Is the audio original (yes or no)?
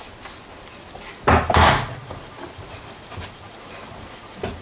yes